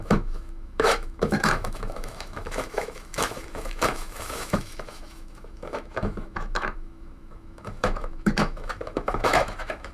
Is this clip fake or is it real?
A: fake